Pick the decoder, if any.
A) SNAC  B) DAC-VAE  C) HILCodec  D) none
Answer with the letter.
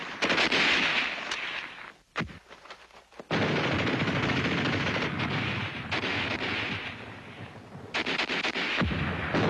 D